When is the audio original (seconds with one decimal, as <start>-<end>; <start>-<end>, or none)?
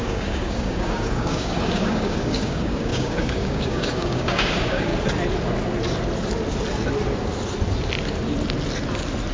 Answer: 4.9-9.3